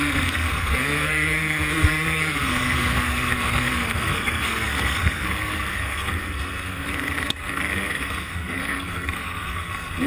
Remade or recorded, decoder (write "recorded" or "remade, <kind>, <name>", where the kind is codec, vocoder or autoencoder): remade, codec, SNAC